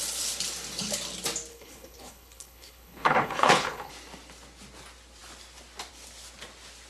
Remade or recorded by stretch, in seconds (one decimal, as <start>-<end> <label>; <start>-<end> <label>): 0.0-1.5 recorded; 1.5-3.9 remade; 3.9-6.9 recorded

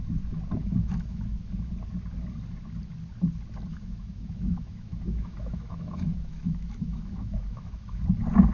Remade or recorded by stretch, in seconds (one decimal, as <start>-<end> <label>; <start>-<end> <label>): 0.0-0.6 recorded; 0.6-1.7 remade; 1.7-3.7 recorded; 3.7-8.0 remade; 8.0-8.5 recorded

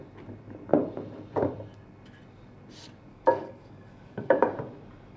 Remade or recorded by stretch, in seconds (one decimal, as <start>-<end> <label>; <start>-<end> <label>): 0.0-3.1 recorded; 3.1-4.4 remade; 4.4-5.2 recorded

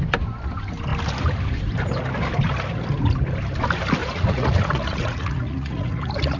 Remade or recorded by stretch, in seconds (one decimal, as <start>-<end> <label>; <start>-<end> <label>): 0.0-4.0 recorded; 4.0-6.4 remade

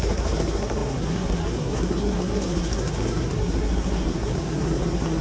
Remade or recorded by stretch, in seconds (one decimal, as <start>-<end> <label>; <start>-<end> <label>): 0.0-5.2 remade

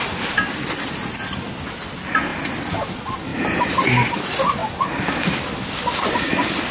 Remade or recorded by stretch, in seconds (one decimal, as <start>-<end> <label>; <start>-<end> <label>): 0.0-6.7 recorded

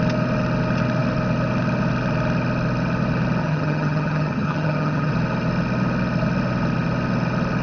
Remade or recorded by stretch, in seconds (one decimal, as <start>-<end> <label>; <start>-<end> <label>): 0.0-3.4 recorded; 3.4-5.1 remade; 5.1-7.6 recorded

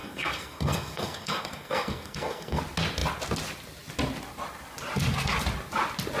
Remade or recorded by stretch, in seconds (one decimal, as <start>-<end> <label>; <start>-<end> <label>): 0.0-2.6 remade; 2.6-6.2 recorded